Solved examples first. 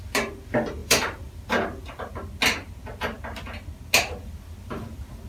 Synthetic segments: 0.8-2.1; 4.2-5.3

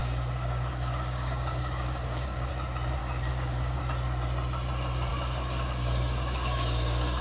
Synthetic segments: 0.0-2.5; 3.0-3.8; 5.1-7.2